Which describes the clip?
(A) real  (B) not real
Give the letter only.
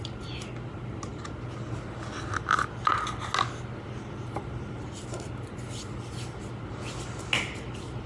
A